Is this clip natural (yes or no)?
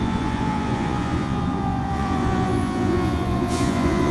no